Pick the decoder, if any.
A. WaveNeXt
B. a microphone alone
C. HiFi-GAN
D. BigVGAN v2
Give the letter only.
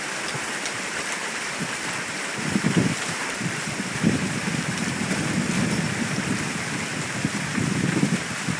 D